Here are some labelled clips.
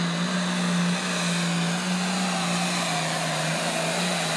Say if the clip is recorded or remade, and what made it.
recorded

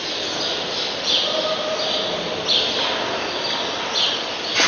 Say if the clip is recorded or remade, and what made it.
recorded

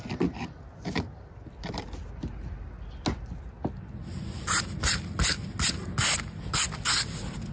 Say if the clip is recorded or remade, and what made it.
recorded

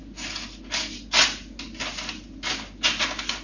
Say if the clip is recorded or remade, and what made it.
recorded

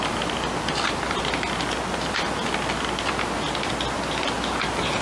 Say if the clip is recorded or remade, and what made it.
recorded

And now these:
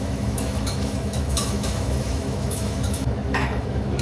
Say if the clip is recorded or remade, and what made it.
remade, autoencoder, DAC-VAE